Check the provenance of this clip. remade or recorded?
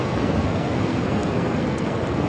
remade